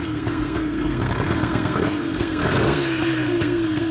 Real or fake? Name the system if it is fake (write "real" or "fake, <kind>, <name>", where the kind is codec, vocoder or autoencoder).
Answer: fake, codec, SNAC